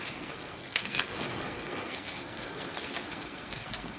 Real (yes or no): no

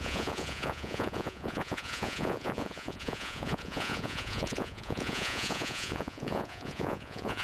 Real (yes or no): no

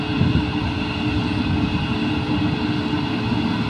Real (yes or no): yes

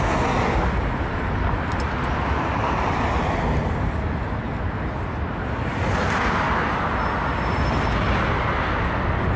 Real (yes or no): yes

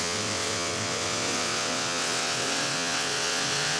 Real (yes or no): no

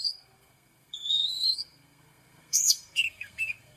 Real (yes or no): no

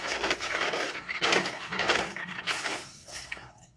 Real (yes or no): no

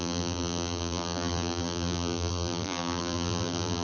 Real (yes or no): no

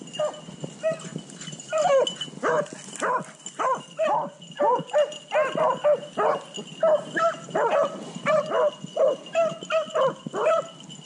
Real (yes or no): yes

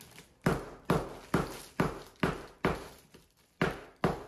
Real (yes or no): yes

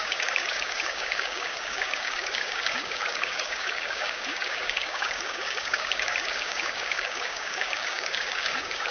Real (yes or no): no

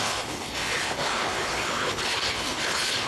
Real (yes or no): no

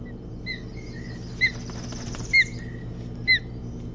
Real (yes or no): yes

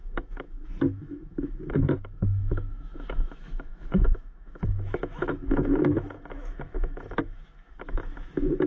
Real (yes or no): no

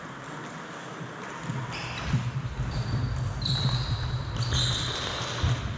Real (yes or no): yes